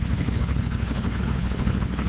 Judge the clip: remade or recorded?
remade